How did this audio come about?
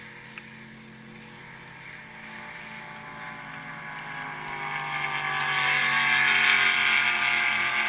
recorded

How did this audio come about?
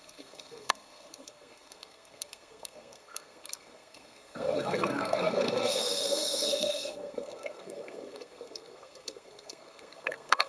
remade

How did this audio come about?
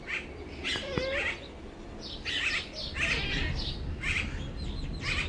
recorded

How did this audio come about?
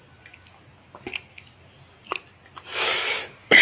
recorded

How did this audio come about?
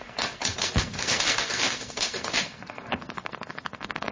remade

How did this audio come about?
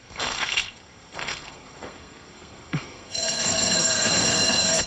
remade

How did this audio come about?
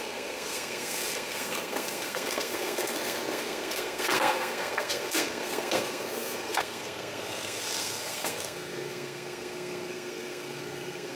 remade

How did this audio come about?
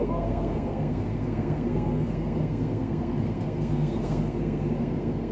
remade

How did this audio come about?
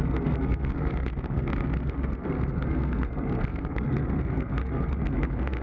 remade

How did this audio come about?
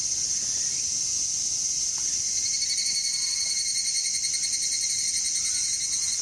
recorded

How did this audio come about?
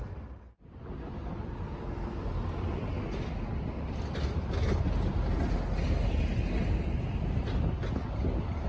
recorded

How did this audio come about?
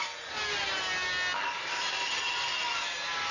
recorded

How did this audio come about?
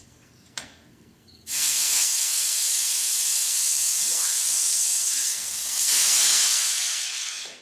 remade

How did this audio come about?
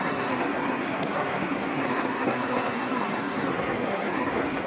remade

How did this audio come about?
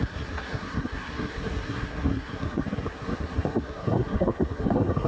remade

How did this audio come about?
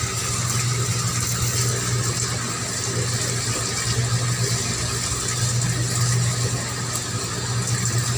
recorded